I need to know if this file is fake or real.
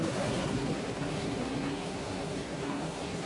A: fake